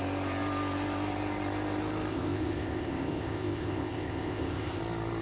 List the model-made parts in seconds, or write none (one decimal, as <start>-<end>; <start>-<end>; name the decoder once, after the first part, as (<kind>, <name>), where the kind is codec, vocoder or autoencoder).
2.1-4.8 (codec, ZipCodec)